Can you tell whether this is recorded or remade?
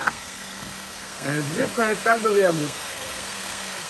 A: remade